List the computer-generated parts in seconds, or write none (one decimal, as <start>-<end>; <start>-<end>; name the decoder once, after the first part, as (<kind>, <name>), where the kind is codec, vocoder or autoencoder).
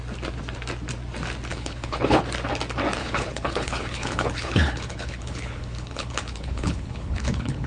1.5-2.2 (codec, HILCodec); 3.0-7.7